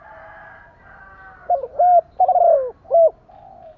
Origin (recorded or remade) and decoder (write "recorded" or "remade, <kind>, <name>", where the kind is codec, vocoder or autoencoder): recorded